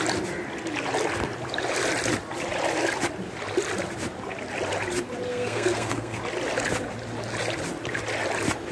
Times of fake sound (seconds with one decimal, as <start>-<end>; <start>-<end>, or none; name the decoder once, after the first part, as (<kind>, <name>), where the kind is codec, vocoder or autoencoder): 5.3-6.2 (codec, SNAC)

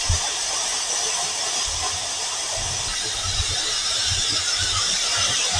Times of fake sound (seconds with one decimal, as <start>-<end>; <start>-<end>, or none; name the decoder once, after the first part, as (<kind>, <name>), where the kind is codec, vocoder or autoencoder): 0.0-0.7 (vocoder, BigVGAN v2); 1.6-5.6

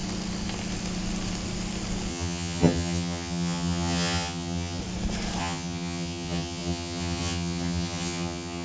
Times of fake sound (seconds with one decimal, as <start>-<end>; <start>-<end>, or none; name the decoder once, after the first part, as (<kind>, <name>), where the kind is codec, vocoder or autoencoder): 2.1-4.8 (vocoder, HiFi-GAN); 5.4-8.6